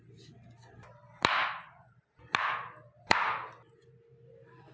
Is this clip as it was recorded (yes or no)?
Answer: yes